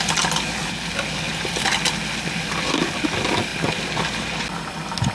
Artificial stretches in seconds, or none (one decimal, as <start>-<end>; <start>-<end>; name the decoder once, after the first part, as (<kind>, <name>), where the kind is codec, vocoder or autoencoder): none